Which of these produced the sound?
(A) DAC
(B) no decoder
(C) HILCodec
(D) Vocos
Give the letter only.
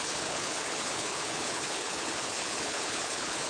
C